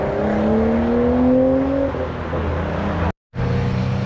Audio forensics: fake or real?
real